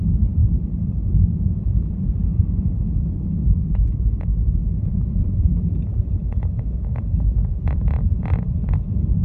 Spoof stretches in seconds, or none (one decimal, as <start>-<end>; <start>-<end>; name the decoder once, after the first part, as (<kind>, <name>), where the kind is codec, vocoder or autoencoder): 0.4-1.9 (autoencoder, DAC-VAE); 2.3-3.6; 6.2-7.2